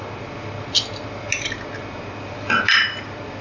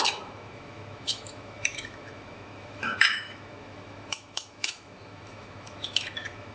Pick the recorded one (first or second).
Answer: first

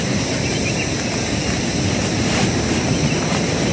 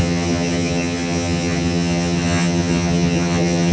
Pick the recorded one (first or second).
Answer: first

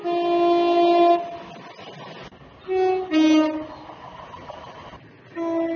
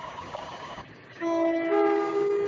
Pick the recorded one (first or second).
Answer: first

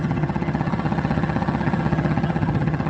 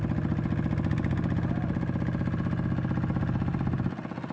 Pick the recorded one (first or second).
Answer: second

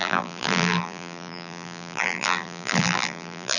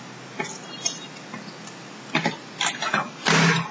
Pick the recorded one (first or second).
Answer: second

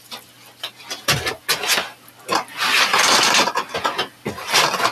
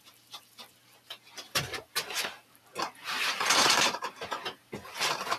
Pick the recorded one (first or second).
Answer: first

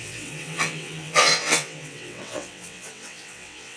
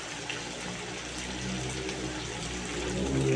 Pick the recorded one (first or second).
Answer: second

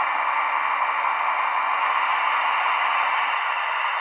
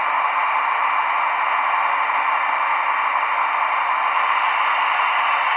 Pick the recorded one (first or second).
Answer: second